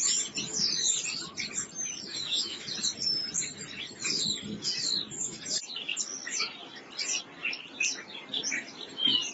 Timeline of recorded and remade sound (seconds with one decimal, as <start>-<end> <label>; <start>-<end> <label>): 0.0-2.1 recorded; 2.1-2.7 remade; 2.7-9.3 recorded